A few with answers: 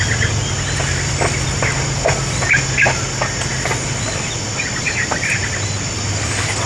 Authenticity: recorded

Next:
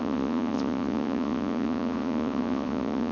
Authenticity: remade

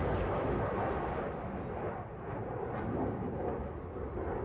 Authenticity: recorded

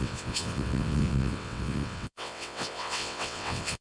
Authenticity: remade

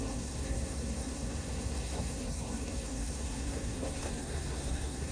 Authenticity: remade